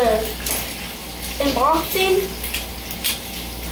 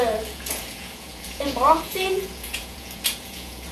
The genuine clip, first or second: first